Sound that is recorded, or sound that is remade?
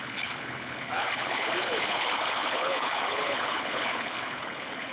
remade